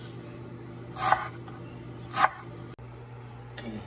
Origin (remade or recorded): recorded